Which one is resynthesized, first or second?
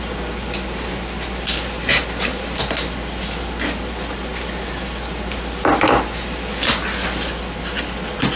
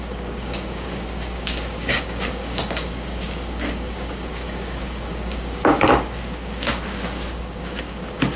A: second